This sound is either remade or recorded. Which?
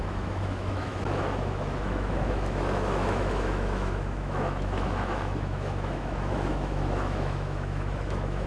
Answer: remade